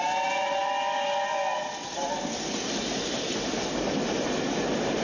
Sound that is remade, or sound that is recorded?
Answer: recorded